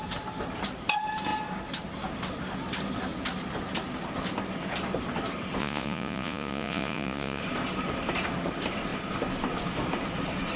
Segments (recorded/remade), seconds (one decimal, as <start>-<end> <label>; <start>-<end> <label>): 0.0-5.6 recorded; 5.6-7.4 remade; 7.4-10.6 recorded